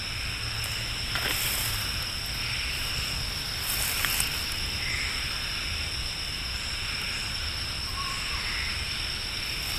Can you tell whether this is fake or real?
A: real